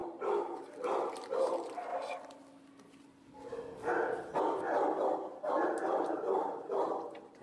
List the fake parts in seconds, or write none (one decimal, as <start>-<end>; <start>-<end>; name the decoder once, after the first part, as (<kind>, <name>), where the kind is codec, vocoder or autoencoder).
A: 0.0-0.6 (vocoder, BigVGAN v2)